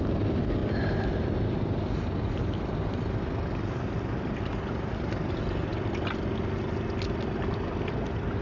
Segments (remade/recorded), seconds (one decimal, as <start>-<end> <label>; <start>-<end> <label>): 0.0-8.4 recorded